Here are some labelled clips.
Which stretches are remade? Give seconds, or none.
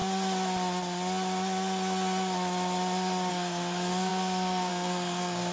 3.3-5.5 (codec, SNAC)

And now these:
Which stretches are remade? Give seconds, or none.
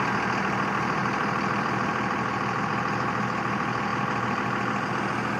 none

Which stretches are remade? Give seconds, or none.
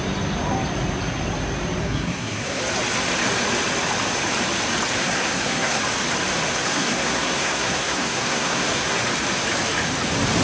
1.8-2.6 (codec, SNAC); 5.0-5.8; 6.6-9.0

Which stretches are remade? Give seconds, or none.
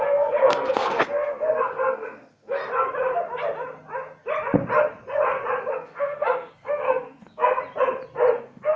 0.0-2.6 (codec, SNAC); 5.7-7.6; 8.4-8.8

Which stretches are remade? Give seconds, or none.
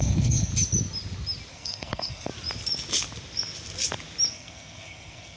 0.0-0.5 (codec, SNAC); 1.5-2.3; 4.3-5.4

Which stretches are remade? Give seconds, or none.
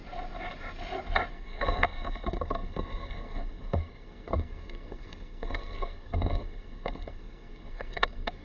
1.3-8.4 (codec, SNAC)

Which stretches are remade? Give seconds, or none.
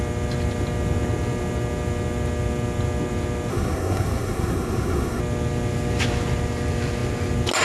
3.5-5.2 (codec, SNAC)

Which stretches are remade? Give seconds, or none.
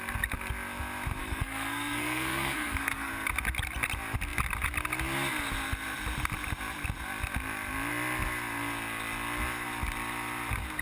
1.2-3.1 (codec, SNAC)